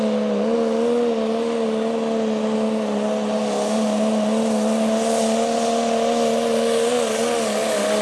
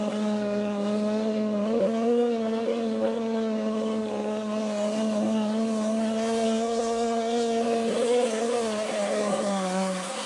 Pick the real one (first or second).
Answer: first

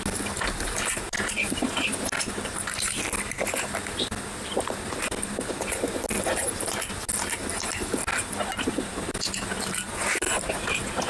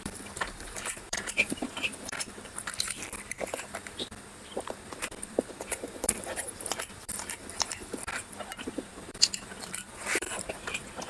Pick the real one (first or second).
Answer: first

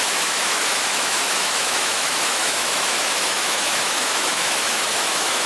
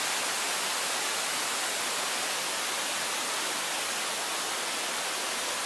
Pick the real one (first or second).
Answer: second